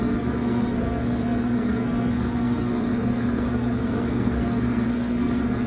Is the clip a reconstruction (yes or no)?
yes